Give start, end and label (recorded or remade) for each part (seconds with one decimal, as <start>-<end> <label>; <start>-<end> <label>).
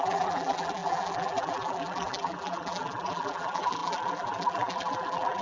0.0-5.4 remade